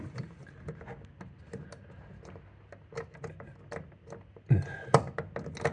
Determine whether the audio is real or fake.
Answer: real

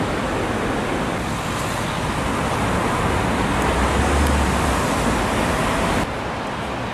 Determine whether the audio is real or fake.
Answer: real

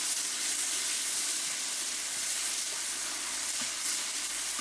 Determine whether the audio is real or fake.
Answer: real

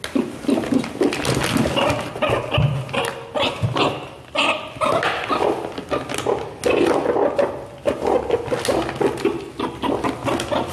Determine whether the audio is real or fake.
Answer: real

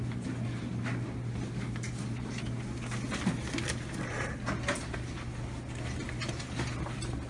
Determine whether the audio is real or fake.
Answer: real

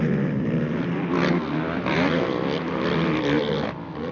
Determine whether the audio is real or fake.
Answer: real